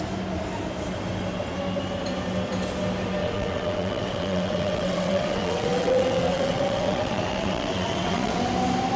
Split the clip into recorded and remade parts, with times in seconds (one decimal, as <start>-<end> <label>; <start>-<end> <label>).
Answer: 0.0-3.2 recorded; 3.2-8.4 remade; 8.4-9.0 recorded